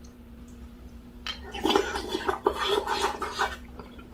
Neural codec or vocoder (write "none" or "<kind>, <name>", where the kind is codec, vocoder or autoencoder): vocoder, BigVGAN v2